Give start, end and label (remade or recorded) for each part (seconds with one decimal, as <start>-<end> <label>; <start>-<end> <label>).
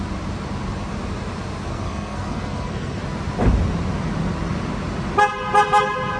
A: 0.0-1.7 recorded; 1.7-3.0 remade; 3.0-6.2 recorded